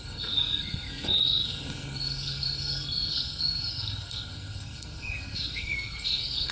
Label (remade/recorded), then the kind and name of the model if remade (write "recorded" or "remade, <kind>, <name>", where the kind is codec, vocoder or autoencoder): remade, codec, SNAC